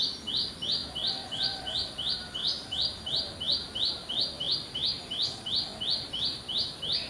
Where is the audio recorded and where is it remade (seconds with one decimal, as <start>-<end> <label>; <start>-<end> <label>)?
0.0-1.2 recorded; 1.2-1.9 remade; 1.9-7.1 recorded